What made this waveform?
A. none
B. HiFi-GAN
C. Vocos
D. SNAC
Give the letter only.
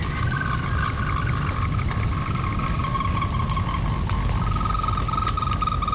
A